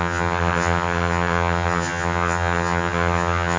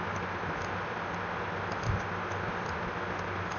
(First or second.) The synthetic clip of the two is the first